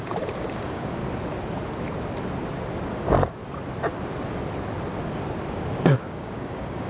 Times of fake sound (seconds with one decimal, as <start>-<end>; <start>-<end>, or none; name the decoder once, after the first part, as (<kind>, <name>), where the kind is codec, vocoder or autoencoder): 0.0-1.0 (codec, DAC); 2.9-3.4; 5.5-6.9